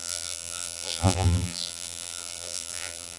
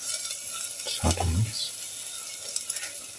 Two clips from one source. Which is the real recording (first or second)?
second